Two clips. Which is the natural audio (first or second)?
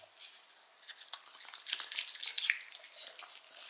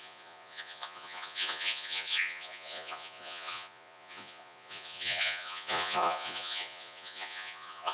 first